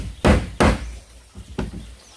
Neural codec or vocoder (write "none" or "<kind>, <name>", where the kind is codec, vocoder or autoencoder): none